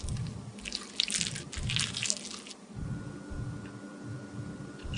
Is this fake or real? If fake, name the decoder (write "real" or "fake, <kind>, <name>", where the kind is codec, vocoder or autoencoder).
real